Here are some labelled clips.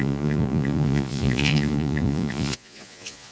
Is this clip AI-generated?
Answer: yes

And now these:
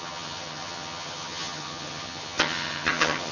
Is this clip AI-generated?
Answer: yes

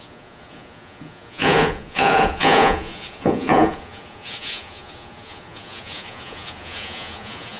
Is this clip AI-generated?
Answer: yes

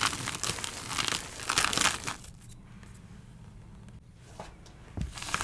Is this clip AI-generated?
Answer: no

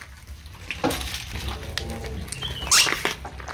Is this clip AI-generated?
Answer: no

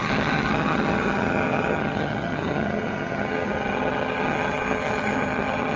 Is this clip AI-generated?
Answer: yes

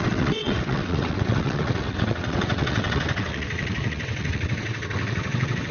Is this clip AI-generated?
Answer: yes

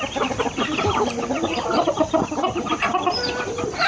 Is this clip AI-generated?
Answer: no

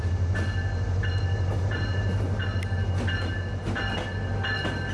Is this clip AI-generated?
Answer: no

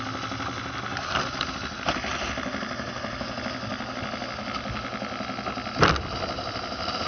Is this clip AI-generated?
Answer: no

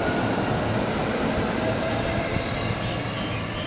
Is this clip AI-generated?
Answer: no